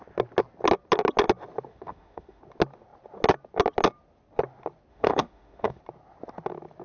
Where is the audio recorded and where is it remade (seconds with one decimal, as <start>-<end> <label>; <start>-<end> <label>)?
0.0-1.7 recorded; 1.7-2.4 remade; 2.4-4.9 recorded; 4.9-5.8 remade; 5.8-6.8 recorded